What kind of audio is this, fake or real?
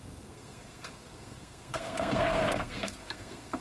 fake